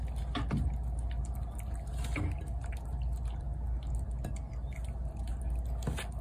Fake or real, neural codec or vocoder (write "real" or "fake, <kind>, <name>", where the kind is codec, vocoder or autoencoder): real